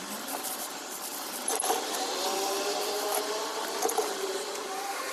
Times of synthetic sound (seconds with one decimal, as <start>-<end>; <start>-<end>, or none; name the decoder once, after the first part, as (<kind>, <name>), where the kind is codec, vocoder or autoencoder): 0.0-5.1 (vocoder, BigVGAN v2)